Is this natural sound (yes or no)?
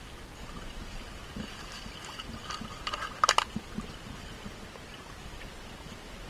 yes